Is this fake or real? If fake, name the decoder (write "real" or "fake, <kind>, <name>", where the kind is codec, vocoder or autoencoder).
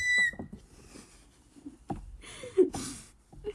real